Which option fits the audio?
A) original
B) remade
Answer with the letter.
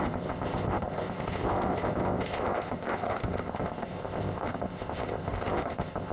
B